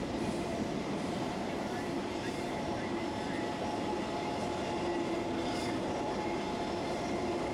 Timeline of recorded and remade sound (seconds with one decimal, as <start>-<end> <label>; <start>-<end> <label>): 0.0-0.5 recorded; 0.5-2.8 remade; 2.8-7.5 recorded